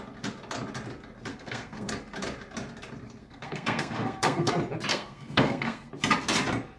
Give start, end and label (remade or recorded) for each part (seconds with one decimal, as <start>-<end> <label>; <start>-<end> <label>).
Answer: 0.0-1.3 recorded; 1.3-1.9 remade; 1.9-3.2 recorded; 3.2-4.5 remade; 4.5-4.9 recorded; 4.9-5.9 remade; 5.9-6.8 recorded